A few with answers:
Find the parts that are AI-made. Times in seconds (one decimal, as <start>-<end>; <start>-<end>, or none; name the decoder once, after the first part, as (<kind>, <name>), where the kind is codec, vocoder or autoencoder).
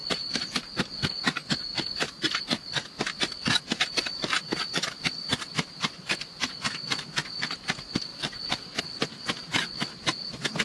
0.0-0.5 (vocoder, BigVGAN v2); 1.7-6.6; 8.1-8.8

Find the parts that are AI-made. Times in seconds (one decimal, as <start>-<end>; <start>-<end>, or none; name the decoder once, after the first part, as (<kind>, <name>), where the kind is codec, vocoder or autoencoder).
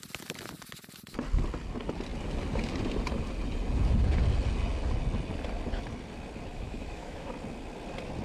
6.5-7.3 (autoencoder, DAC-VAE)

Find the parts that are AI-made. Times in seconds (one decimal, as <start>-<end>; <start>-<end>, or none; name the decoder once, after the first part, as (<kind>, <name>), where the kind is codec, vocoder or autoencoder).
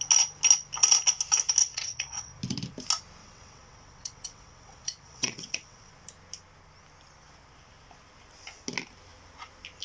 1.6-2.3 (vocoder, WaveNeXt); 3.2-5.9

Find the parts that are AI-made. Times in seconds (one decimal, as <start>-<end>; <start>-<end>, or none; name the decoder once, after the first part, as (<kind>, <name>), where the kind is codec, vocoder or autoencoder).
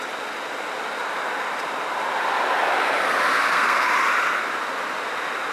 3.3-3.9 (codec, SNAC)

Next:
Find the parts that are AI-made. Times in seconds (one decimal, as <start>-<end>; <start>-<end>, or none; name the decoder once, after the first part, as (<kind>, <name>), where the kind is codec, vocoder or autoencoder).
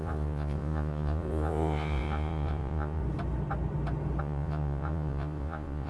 0.0-3.0 (vocoder, Vocos); 4.2-5.9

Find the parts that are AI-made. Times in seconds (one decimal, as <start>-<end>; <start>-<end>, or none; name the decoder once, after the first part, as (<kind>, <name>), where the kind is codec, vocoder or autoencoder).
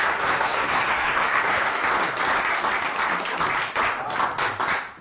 0.0-1.8 (codec, SNAC)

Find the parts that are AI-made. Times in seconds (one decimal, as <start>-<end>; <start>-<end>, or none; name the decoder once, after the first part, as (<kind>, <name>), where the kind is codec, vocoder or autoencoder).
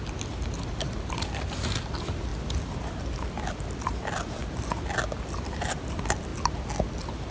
none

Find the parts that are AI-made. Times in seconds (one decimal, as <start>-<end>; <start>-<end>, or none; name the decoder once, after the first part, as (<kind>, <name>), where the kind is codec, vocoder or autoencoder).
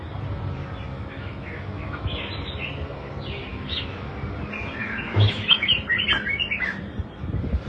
0.9-2.3 (autoencoder, DAC-VAE); 3.5-4.1; 4.8-5.7